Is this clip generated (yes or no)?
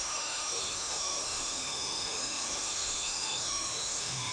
yes